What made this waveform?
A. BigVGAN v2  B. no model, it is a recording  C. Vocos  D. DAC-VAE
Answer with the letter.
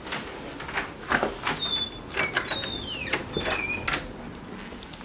B